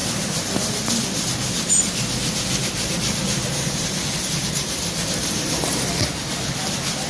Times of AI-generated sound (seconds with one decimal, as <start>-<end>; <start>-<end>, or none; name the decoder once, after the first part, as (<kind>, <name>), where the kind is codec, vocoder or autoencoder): 2.6-6.3 (vocoder, BigVGAN v2)